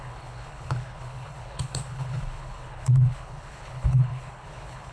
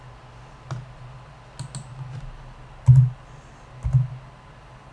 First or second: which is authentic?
second